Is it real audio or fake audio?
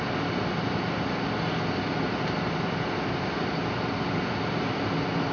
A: real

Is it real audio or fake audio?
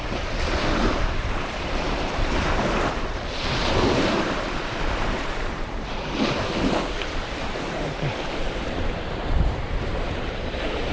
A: fake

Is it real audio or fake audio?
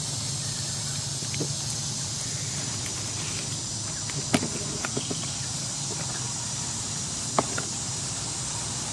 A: real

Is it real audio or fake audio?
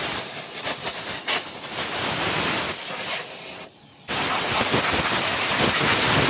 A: fake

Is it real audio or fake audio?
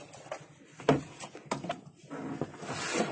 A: real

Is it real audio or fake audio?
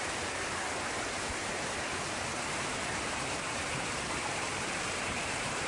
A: fake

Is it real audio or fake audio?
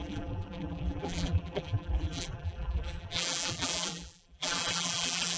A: fake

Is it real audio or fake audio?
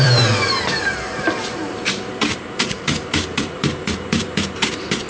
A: fake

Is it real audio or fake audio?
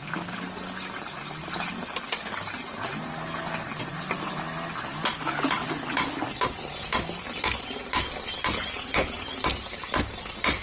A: real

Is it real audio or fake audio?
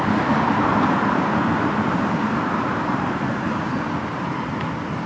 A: fake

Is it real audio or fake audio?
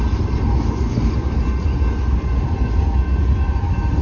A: real